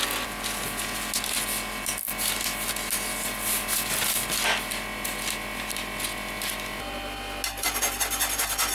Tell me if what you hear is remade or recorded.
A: recorded